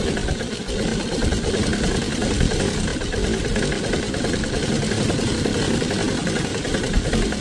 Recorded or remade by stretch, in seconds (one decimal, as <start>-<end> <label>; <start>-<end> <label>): 0.0-7.4 recorded